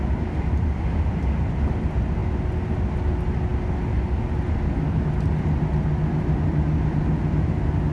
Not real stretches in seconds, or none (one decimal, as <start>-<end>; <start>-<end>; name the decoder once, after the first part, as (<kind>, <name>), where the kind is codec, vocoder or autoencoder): none